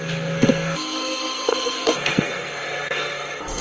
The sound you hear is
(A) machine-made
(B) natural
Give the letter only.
A